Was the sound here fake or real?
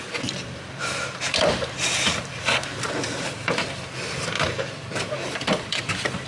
fake